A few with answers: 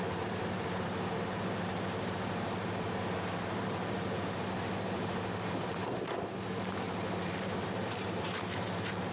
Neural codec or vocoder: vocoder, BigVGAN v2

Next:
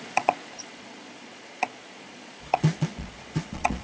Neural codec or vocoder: vocoder, Vocos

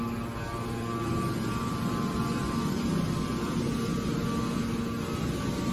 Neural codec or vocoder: none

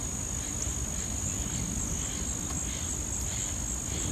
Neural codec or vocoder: none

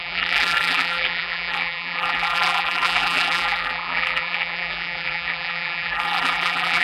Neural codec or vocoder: vocoder, BigVGAN v2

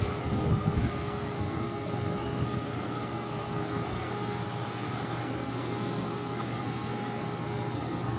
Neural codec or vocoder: codec, SNAC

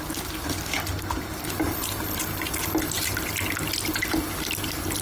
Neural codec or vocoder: none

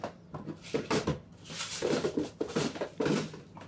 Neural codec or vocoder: none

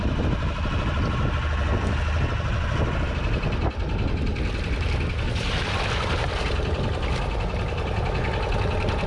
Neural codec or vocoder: none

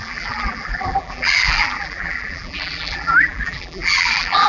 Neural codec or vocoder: vocoder, BigVGAN v2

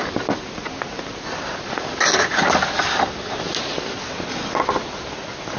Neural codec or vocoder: none